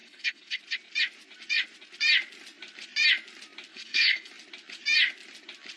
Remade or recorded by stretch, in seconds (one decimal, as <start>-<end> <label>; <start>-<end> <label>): 0.0-0.6 remade; 0.6-3.7 recorded; 3.7-4.3 remade; 4.3-5.8 recorded